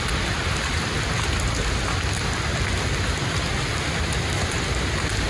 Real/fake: real